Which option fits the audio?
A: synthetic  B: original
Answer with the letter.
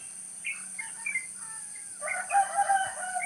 B